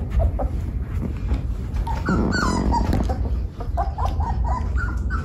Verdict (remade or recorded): recorded